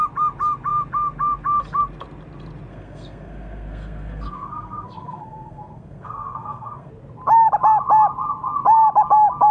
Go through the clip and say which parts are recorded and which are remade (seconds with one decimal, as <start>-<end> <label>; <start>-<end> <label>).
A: 0.0-2.7 recorded; 2.7-6.9 remade; 6.9-9.5 recorded